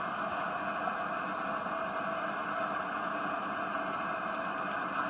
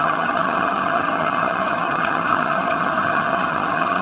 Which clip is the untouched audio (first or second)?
first